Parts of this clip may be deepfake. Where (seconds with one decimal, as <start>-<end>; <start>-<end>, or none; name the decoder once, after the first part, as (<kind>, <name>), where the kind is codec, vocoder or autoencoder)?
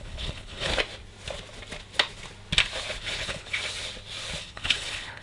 0.0-0.7 (codec, HILCodec); 3.0-3.6; 4.4-5.2